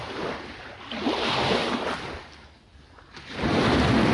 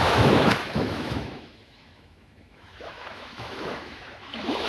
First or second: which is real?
first